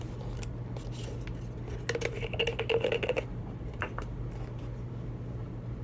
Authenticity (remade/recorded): recorded